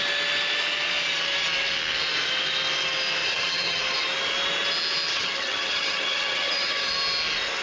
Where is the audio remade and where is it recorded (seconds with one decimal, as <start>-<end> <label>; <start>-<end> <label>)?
0.0-3.2 recorded; 3.2-3.8 remade; 3.8-5.1 recorded; 5.1-6.9 remade; 6.9-7.6 recorded